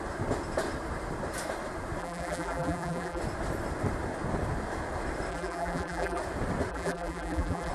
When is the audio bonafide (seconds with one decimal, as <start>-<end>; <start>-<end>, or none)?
0.0-2.0; 3.2-5.3; 6.2-6.7